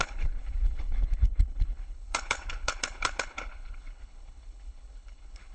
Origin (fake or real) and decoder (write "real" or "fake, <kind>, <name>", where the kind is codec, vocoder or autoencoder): fake, codec, HILCodec